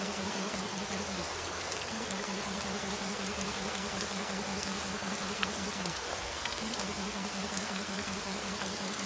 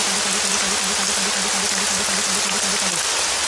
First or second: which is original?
second